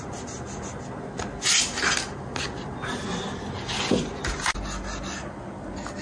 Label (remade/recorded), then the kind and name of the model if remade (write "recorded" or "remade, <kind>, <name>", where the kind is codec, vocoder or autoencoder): recorded